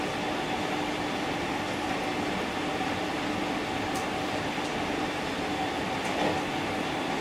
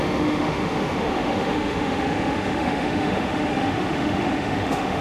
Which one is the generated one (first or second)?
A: second